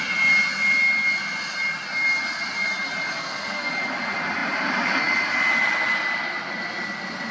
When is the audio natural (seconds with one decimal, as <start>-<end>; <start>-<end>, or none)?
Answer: 0.0-3.2; 3.7-7.3